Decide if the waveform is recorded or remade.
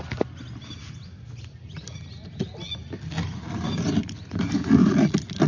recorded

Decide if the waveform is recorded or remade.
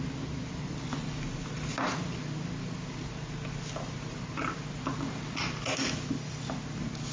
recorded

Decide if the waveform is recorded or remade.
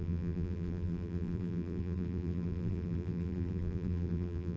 remade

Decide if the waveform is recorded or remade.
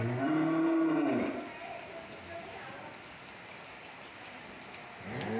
recorded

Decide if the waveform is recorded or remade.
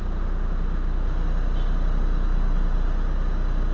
recorded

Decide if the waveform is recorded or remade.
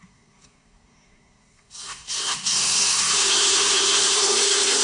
remade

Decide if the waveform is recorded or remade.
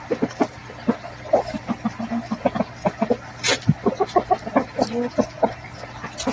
remade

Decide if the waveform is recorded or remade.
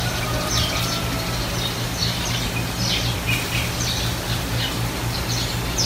recorded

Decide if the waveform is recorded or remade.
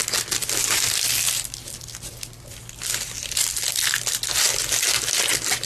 recorded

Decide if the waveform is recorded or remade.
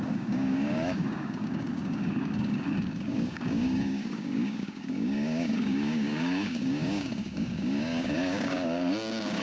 remade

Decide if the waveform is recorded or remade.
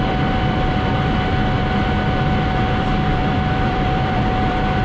remade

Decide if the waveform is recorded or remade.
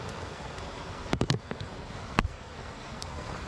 remade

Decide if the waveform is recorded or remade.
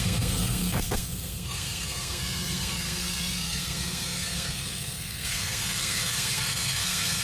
remade